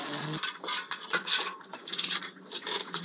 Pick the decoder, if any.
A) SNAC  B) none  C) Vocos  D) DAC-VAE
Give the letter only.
C